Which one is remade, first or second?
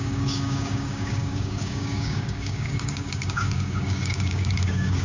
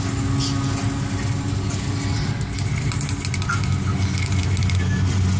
first